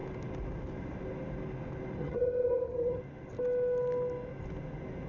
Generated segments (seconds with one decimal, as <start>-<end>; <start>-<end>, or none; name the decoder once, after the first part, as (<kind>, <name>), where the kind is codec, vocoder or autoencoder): 2.0-3.0 (vocoder, HiFi-GAN)